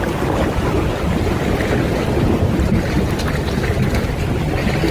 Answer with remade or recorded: recorded